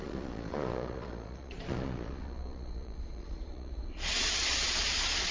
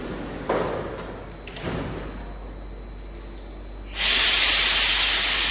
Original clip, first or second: second